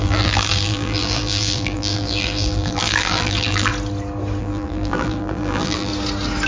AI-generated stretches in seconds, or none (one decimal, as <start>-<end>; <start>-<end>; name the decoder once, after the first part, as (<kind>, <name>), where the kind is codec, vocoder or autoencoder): 0.0-3.7 (vocoder, BigVGAN v2); 4.4-5.9